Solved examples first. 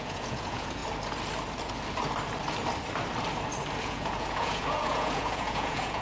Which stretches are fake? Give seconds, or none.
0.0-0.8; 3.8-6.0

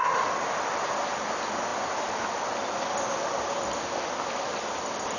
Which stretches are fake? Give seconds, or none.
none

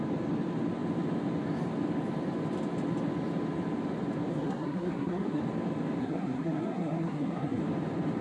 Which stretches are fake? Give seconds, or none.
4.3-5.4; 6.0-7.6